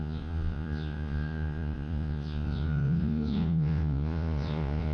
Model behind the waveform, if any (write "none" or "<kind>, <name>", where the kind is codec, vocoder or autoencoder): vocoder, Vocos